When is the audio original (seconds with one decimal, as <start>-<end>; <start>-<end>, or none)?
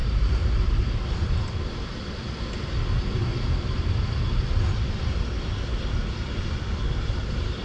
0.8-7.6